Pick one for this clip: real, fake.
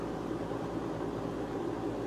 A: fake